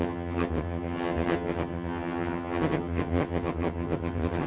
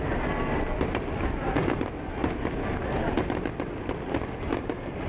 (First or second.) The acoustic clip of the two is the second